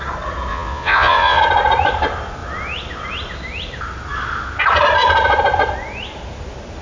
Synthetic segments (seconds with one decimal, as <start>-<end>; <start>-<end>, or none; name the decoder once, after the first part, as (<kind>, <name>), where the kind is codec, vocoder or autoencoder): 0.5-1.4 (vocoder, Vocos)